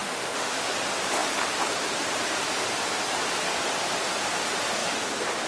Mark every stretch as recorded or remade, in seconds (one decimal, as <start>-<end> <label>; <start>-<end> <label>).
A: 0.0-0.7 remade; 0.7-5.5 recorded